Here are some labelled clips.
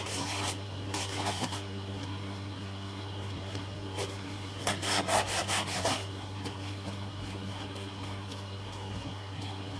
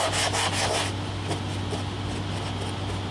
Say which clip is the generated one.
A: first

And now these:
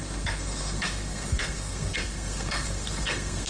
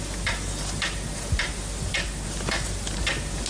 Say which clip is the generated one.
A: first